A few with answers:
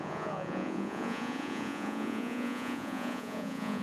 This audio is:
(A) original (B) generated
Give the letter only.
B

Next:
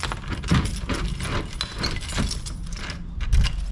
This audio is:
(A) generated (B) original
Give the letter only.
B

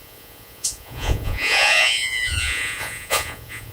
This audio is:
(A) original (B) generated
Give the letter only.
B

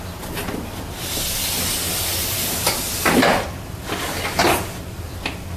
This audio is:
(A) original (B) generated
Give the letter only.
A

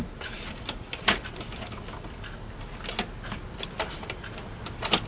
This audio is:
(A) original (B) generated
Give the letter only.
A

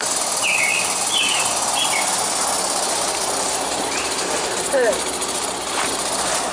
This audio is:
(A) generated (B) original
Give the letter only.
B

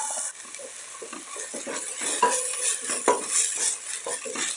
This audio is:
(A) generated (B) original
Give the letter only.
B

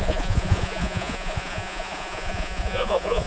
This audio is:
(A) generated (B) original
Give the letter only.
A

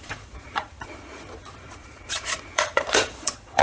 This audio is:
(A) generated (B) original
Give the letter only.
A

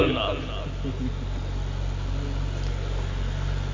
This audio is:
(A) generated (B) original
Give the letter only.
B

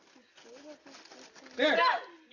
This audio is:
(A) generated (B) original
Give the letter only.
B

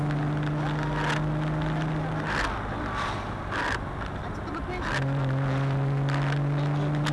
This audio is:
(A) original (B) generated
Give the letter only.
A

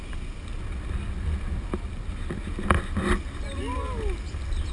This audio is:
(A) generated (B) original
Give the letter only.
B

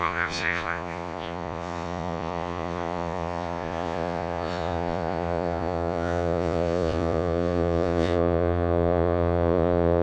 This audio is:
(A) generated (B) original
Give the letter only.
A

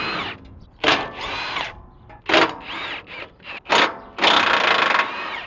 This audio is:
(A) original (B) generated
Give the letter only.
A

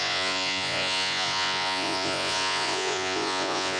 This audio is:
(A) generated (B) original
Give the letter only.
A